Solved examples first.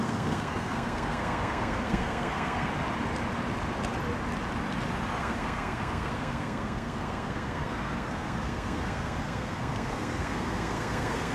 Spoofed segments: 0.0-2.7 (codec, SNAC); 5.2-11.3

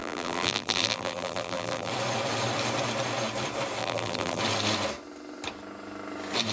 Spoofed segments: 0.0-1.9 (vocoder, BigVGAN v2); 3.8-4.4

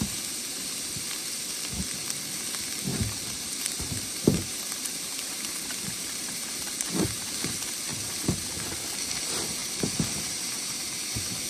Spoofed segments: 2.9-7.5 (vocoder, BigVGAN v2); 7.9-8.5; 9.6-11.5